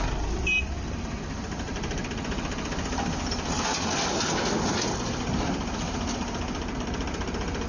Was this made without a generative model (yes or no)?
yes